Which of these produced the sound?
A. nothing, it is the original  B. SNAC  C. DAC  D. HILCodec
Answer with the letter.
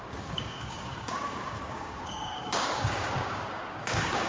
C